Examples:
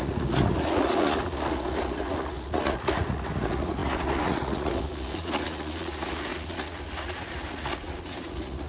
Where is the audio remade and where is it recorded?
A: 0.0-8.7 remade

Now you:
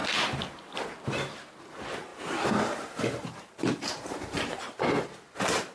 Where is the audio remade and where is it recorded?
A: 0.0-1.6 recorded; 1.6-5.7 remade

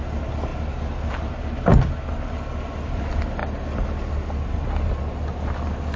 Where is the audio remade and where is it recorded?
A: 0.0-6.0 recorded

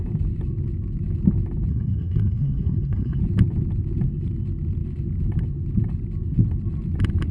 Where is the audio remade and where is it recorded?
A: 0.0-1.7 recorded; 1.7-3.2 remade; 3.2-7.3 recorded

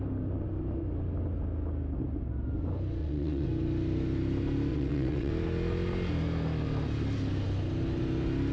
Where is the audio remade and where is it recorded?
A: 0.0-3.0 recorded; 3.0-3.5 remade; 3.5-4.7 recorded; 4.7-5.3 remade; 5.3-8.5 recorded

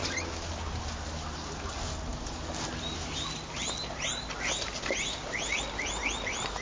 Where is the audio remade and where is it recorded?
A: 0.0-6.6 recorded